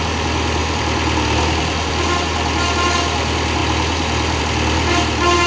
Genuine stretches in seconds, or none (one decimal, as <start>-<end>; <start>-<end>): 0.0-0.6; 1.9-5.5